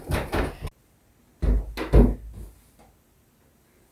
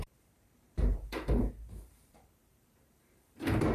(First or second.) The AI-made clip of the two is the second